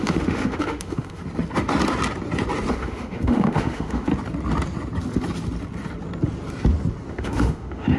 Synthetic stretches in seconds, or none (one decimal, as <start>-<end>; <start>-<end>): 0.0-1.2; 2.7-4.1; 7.1-8.0